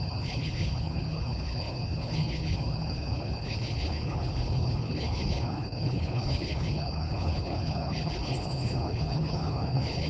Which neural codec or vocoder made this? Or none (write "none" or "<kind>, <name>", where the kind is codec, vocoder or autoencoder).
codec, HILCodec